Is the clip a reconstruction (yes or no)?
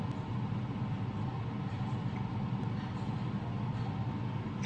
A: no